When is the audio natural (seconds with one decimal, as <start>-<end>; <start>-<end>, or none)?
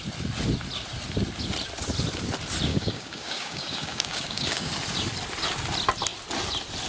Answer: 0.0-2.7; 4.7-6.9